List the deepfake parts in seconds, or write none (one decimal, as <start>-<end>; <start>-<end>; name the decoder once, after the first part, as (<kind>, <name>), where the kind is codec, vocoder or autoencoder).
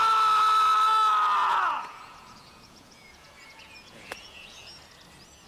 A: 1.4-4.7 (vocoder, Vocos)